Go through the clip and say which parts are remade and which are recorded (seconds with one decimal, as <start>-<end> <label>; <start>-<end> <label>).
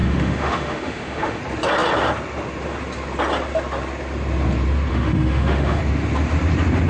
0.0-1.4 remade; 1.4-4.9 recorded; 4.9-5.8 remade; 5.8-6.9 recorded